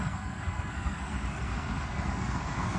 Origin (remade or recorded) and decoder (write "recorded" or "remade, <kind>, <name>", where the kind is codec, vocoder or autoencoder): remade, codec, SNAC